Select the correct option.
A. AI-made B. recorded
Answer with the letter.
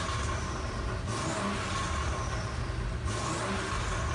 B